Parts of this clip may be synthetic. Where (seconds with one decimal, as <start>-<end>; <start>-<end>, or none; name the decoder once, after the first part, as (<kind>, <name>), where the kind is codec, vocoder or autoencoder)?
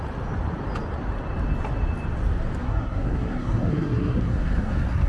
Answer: 2.6-5.1 (codec, SNAC)